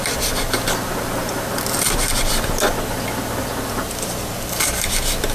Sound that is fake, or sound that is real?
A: real